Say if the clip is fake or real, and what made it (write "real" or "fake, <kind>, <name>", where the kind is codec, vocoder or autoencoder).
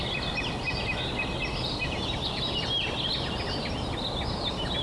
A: real